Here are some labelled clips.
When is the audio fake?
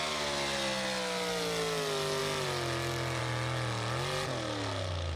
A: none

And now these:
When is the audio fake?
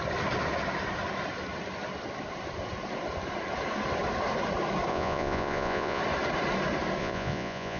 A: 4.9-6.0 (vocoder, Vocos); 7.0-7.8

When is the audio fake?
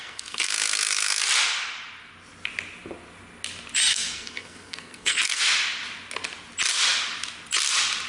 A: 0.0-1.2 (codec, SNAC); 3.9-5.4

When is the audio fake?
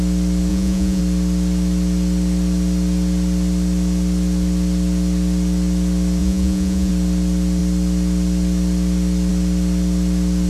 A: 0.5-1.0 (vocoder, Vocos); 6.2-6.9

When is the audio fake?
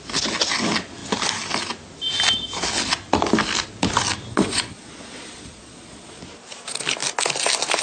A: 4.3-6.2 (vocoder, Vocos)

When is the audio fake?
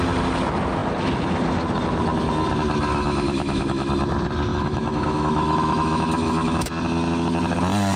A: 2.9-3.9 (autoencoder, DAC-VAE); 4.5-6.7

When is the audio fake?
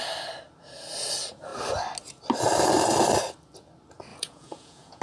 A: 4.1-5.0 (vocoder, Vocos)